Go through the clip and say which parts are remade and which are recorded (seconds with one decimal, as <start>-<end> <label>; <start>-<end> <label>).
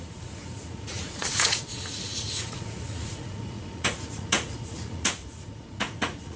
0.0-6.4 remade